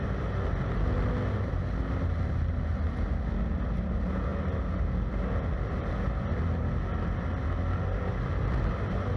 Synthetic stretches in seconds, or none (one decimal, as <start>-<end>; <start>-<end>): none